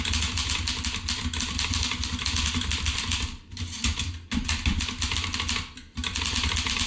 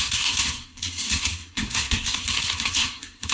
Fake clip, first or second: second